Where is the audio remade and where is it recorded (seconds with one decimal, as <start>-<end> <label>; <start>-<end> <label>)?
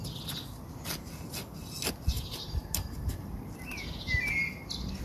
0.0-2.1 recorded; 2.1-3.1 remade; 3.1-5.0 recorded